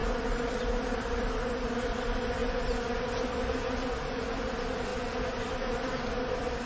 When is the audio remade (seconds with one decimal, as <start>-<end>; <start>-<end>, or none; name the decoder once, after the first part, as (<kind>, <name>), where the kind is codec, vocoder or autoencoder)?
1.1-2.4 (vocoder, BigVGAN v2); 4.0-6.7